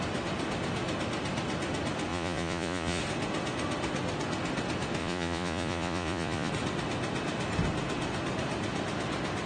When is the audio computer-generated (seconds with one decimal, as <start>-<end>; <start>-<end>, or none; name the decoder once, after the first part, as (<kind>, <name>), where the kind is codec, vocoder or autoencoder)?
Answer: 2.1-3.0 (vocoder, Vocos); 5.0-6.5